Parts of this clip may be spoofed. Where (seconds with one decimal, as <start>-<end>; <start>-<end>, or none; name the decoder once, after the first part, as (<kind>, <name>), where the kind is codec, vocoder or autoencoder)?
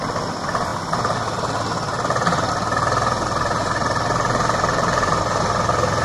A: 3.6-5.2 (vocoder, BigVGAN v2)